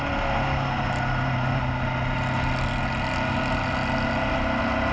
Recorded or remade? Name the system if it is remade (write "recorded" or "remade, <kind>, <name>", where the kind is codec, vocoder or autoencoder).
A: recorded